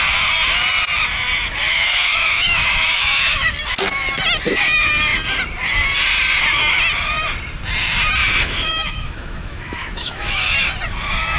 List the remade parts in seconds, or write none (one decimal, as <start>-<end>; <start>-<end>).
1.6-3.5; 8.2-10.5